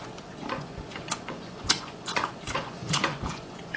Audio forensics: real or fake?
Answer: fake